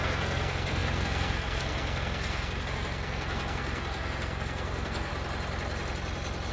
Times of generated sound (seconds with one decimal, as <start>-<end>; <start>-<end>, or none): 0.0-5.1